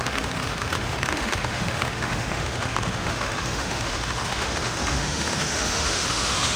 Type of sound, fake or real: fake